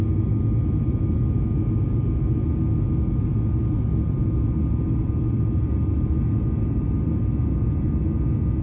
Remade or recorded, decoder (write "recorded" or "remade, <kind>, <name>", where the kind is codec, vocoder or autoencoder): recorded